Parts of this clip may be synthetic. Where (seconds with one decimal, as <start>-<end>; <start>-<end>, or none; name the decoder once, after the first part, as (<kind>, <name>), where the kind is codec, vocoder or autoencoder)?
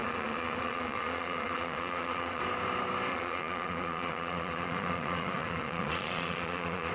0.0-2.4 (vocoder, Vocos); 3.1-6.9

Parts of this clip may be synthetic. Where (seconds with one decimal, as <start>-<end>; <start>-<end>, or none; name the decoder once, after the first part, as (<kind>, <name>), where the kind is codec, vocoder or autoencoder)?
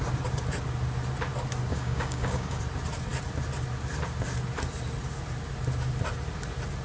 1.7-2.6 (codec, DAC)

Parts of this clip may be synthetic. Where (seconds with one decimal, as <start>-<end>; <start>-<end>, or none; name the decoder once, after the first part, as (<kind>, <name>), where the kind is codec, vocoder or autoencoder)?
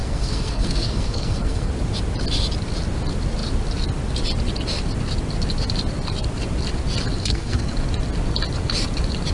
0.0-1.7 (codec, SNAC); 7.2-7.7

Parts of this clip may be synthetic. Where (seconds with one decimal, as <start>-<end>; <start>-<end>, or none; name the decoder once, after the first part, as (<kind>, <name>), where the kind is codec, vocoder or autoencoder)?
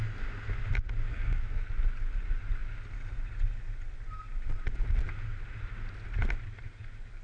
1.1-1.7 (codec, SNAC)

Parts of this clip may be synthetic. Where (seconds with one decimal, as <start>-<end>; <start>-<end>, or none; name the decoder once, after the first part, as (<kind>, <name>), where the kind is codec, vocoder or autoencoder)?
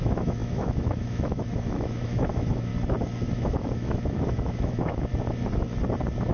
0.0-2.7 (autoencoder, DAC-VAE); 3.3-5.1